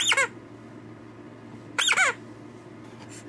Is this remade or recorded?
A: recorded